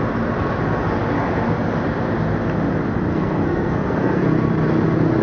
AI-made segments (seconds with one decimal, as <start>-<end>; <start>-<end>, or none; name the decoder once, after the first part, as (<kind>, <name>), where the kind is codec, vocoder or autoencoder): 3.1-4.2 (codec, SNAC)